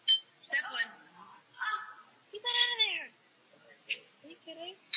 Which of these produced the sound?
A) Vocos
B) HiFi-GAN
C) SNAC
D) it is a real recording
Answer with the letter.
D